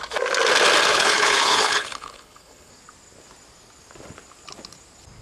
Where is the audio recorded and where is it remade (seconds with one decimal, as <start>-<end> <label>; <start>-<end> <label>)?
0.0-0.9 recorded; 0.9-2.7 remade; 2.7-5.2 recorded